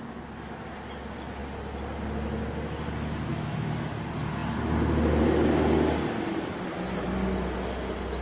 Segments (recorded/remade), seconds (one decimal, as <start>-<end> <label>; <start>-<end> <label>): 0.0-3.3 recorded; 3.3-4.0 remade; 4.0-8.2 recorded